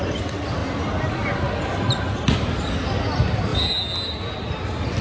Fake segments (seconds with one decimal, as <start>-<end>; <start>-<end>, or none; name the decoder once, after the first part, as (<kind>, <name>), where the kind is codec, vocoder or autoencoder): none